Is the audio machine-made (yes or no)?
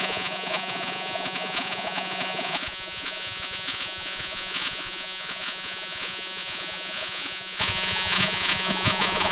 yes